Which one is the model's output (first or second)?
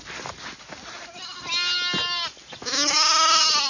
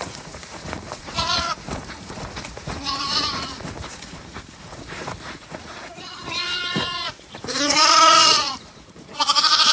second